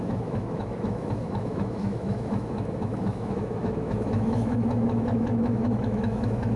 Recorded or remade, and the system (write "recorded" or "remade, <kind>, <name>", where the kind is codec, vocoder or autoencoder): remade, autoencoder, DAC-VAE